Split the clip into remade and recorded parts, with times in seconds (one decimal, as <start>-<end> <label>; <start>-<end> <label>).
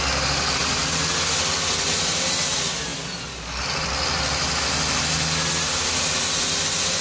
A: 0.0-7.0 recorded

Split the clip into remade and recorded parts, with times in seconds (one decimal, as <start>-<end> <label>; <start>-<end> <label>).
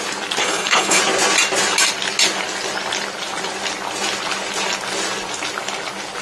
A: 0.0-0.4 recorded; 0.4-1.0 remade; 1.0-6.2 recorded